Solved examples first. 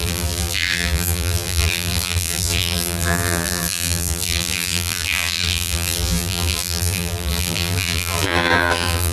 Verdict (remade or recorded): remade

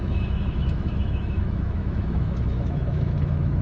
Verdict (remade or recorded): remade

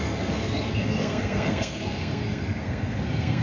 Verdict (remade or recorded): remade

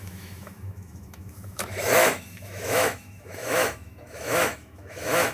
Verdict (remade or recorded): remade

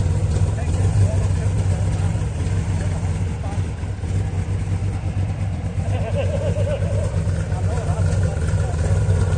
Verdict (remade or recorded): recorded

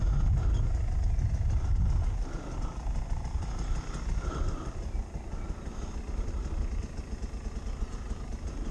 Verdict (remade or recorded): recorded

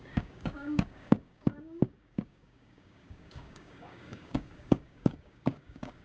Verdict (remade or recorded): remade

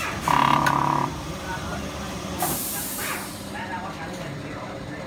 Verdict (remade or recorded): remade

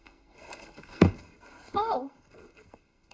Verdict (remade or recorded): remade